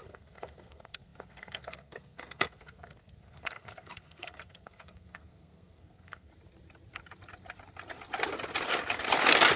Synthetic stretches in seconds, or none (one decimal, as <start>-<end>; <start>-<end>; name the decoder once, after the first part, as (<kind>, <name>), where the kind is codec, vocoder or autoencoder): 0.0-6.3 (codec, SNAC)